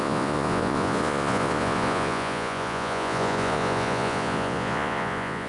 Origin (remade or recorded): remade